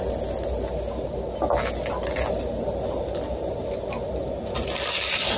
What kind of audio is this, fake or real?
real